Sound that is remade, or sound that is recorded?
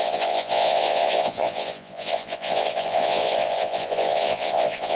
remade